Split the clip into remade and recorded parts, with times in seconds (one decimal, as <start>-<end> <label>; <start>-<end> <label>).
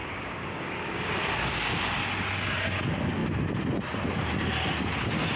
0.0-1.1 remade; 1.1-5.4 recorded